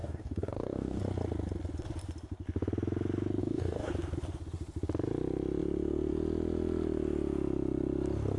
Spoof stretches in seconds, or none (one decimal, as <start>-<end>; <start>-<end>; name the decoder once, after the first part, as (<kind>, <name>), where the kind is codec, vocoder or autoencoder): 0.0-1.0 (codec, DAC); 3.4-3.9